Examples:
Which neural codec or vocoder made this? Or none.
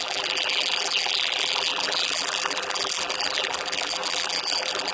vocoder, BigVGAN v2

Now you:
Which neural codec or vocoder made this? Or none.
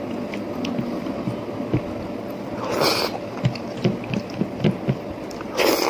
none